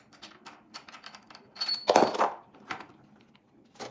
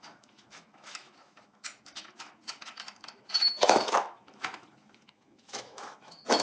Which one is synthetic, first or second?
second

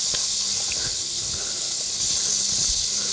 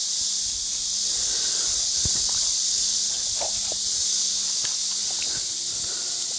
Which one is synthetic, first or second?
first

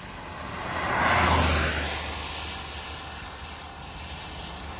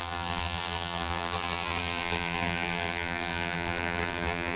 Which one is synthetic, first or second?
second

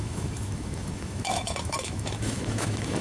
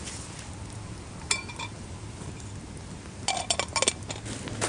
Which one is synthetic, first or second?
first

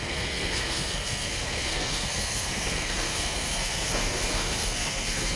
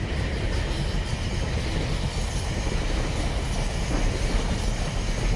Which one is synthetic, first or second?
first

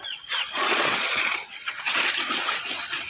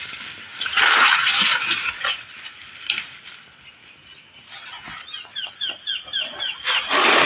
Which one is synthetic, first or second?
first